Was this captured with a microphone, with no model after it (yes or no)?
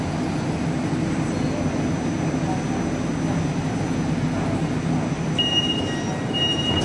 yes